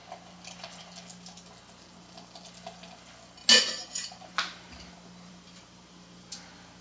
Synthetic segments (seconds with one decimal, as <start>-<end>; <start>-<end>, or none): none